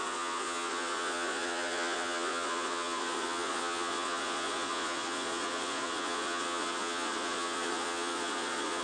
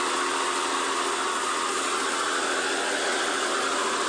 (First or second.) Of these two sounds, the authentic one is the second